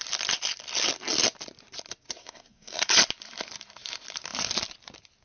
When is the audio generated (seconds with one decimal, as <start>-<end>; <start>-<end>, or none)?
2.2-2.9